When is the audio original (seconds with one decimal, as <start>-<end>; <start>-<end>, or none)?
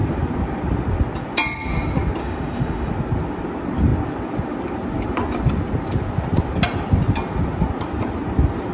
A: 0.0-2.2; 2.9-8.7